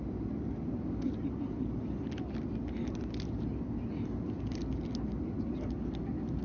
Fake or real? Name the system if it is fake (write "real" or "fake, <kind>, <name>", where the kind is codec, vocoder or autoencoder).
real